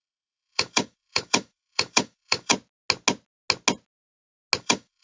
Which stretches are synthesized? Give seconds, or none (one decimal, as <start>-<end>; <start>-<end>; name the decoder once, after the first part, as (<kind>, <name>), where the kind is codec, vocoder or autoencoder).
0.0-2.5 (autoencoder, DAC-VAE); 4.6-5.0